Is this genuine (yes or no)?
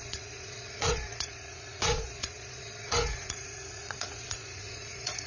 no